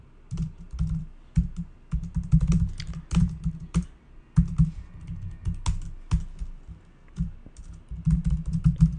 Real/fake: real